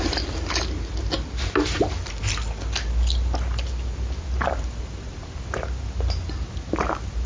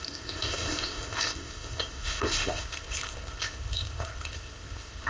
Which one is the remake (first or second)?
second